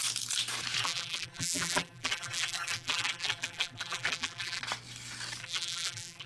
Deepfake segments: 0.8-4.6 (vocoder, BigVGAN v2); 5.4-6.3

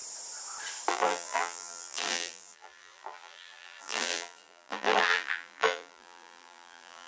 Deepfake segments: 0.9-7.1 (vocoder, BigVGAN v2)

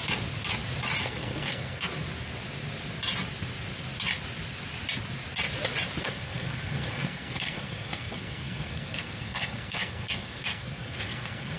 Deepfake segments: 1.0-1.9 (codec, SNAC); 6.0-11.6

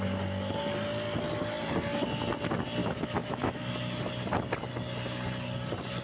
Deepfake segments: 2.8-3.7 (autoencoder, DAC-VAE)

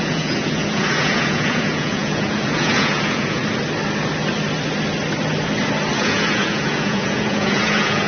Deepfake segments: 0.0-3.4 (vocoder, Vocos); 6.0-8.1

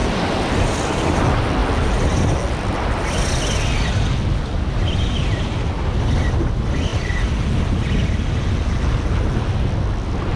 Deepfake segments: none

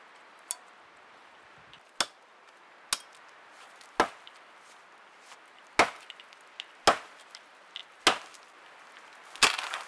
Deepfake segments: none